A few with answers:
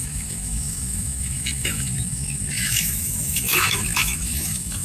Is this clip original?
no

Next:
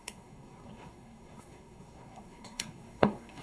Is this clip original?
no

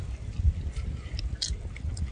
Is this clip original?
yes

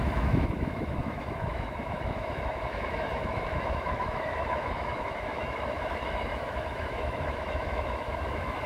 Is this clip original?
no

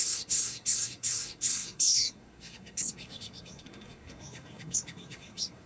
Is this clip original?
no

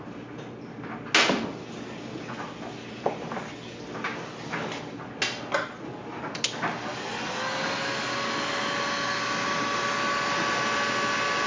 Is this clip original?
yes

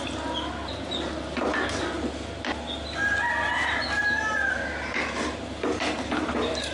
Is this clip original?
yes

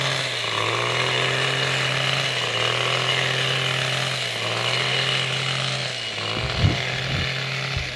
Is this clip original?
yes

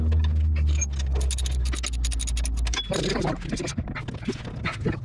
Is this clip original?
yes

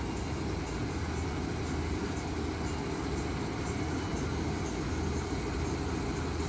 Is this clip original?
yes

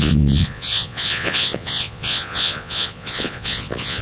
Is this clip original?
no